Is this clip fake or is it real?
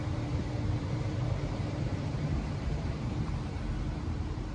fake